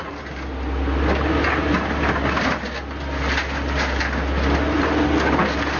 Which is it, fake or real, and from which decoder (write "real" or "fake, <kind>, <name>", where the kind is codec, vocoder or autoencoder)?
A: real